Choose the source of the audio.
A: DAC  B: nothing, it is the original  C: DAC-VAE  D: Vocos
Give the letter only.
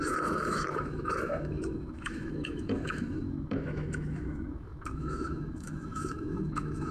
C